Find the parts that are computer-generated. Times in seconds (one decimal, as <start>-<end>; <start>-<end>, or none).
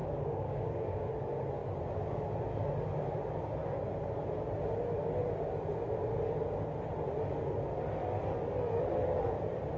0.0-1.1